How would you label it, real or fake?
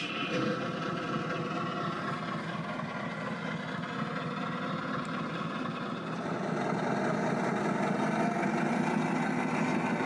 real